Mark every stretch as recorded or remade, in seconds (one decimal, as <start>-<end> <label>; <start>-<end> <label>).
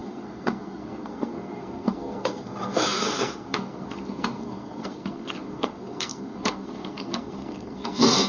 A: 0.0-8.3 remade